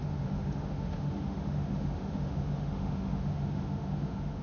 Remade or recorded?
remade